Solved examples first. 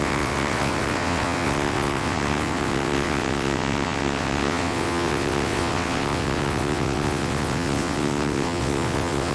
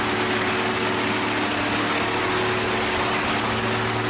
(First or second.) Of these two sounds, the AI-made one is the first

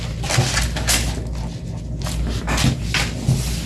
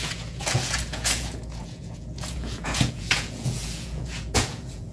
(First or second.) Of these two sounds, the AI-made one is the second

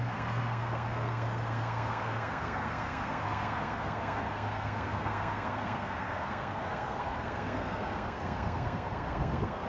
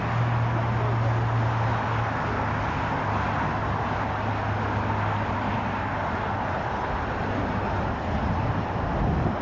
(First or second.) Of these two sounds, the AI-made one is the first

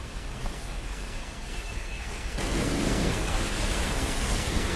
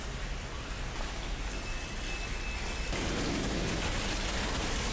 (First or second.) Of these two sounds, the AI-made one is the first